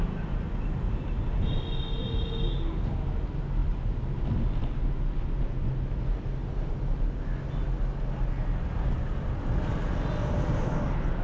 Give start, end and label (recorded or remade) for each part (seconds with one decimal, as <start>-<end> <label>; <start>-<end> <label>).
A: 0.0-6.4 recorded; 6.4-7.2 remade; 7.2-11.2 recorded